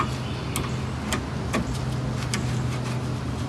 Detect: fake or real real